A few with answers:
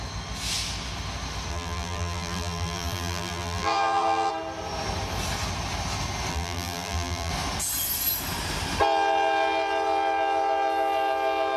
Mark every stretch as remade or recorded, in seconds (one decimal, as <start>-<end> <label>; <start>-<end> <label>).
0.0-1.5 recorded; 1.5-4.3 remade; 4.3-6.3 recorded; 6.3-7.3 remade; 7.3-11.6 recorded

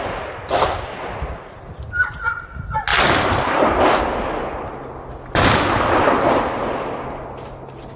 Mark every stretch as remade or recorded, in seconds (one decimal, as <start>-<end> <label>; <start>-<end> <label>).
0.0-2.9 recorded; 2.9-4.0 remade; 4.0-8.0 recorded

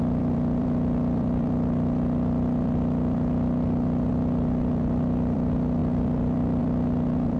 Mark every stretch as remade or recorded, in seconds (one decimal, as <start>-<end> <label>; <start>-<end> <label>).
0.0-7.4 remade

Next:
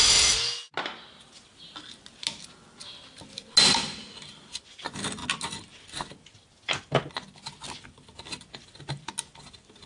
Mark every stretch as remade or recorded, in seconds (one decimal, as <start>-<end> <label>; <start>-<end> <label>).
0.0-9.9 recorded